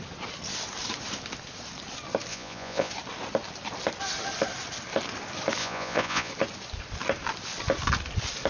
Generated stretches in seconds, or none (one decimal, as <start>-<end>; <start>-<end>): 2.3-2.9; 5.6-6.3